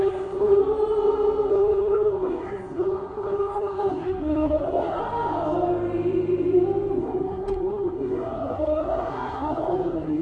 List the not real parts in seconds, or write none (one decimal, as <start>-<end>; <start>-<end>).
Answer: 0.0-0.6; 1.5-5.0; 7.0-10.2